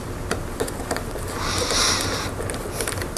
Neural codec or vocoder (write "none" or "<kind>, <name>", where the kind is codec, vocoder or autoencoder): none